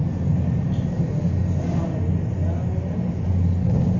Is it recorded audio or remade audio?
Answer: recorded